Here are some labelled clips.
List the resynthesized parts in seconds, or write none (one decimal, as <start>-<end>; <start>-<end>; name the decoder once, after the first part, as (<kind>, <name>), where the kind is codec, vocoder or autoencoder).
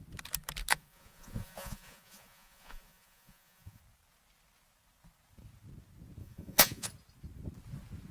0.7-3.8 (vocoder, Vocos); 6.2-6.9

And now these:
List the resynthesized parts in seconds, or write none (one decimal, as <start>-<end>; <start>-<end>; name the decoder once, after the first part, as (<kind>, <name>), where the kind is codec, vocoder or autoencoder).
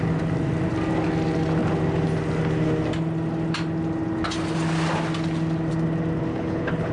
6.3-6.9 (codec, HILCodec)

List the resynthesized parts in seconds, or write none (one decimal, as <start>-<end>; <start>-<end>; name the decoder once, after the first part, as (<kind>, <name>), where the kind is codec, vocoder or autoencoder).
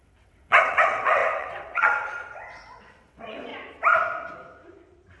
0.0-3.5 (vocoder, WaveNeXt)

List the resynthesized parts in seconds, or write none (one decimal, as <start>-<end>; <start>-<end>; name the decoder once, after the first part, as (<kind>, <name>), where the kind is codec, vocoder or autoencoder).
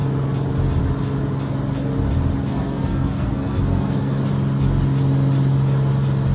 2.5-4.3 (codec, SNAC)